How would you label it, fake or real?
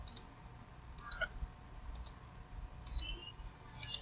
real